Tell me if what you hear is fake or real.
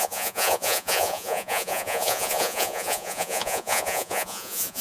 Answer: fake